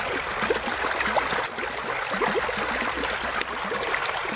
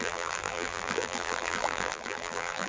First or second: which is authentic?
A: first